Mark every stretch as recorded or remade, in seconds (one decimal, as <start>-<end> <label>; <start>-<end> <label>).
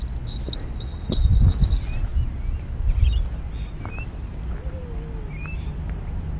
0.0-6.4 recorded